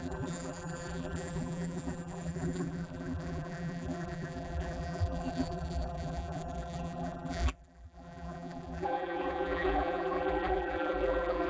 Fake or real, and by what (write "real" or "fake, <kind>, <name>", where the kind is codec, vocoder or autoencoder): fake, vocoder, BigVGAN v2